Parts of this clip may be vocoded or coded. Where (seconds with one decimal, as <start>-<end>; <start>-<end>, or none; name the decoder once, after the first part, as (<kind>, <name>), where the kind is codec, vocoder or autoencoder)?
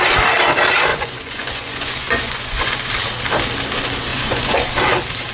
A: 0.9-2.9 (vocoder, Vocos); 4.1-4.7